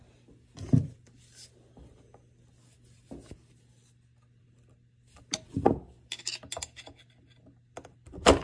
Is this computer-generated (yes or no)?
no